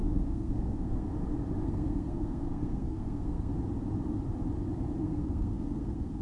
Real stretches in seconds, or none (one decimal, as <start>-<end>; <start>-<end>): 1.1-1.6; 3.5-5.0